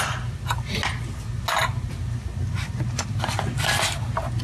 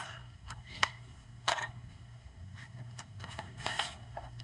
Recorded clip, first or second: first